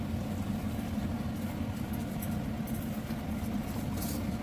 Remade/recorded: recorded